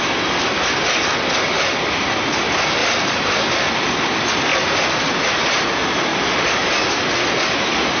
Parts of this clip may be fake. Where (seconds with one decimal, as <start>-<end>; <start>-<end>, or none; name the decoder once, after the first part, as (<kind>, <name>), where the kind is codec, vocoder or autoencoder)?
2.8-3.7 (vocoder, BigVGAN v2); 4.5-5.6; 6.1-6.7